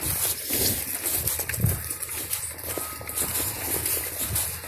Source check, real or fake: real